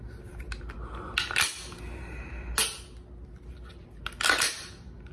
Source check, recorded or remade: recorded